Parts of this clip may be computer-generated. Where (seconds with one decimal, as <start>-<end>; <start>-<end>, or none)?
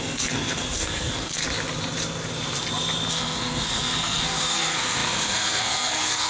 0.0-1.4; 3.1-6.3